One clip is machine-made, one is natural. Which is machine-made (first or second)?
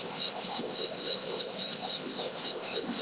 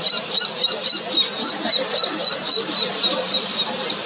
first